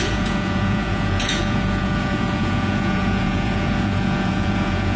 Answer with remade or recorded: remade